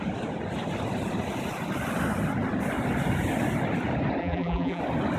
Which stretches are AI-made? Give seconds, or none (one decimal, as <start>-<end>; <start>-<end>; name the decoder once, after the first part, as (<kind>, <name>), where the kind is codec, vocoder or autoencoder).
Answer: 4.2-4.8 (vocoder, BigVGAN v2)